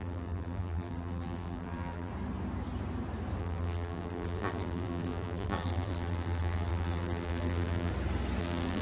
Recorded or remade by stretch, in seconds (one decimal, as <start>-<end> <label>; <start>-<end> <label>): 0.0-2.1 remade; 2.1-3.4 recorded; 3.4-7.9 remade; 7.9-8.4 recorded; 8.4-8.8 remade